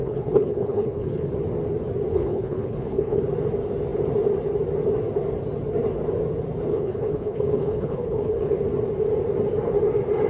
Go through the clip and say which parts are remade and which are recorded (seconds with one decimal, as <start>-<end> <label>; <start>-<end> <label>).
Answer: 0.0-1.3 remade; 1.3-2.1 recorded; 2.1-3.2 remade; 3.2-6.7 recorded; 6.7-8.6 remade; 8.6-10.3 recorded